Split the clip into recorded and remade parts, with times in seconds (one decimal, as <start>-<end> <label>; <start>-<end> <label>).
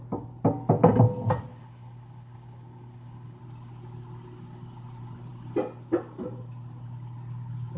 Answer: 0.0-1.5 recorded; 1.5-3.4 remade; 3.4-7.8 recorded